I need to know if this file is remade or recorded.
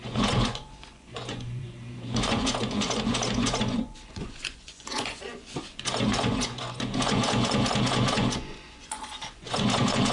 remade